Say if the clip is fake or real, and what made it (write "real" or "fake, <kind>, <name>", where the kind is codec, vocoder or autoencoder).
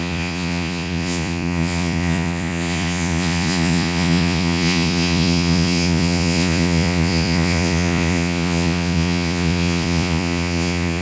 fake, vocoder, Vocos